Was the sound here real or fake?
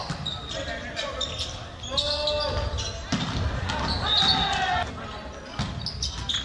real